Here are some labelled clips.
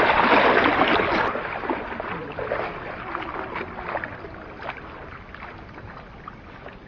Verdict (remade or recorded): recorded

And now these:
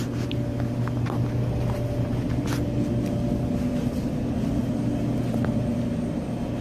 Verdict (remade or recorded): recorded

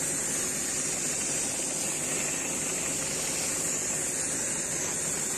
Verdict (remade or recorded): recorded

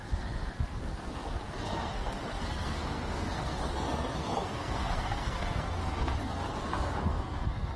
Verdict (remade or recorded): remade